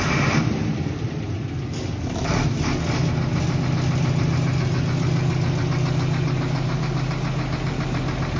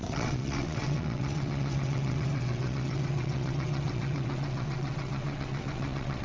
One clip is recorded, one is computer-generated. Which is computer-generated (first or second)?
second